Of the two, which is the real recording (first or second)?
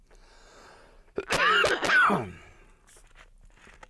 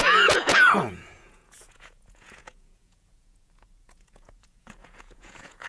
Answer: first